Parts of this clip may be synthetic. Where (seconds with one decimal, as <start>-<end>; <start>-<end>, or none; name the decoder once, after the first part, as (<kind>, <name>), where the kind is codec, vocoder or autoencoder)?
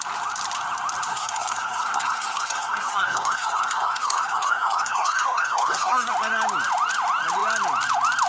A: 1.1-6.1 (codec, SNAC)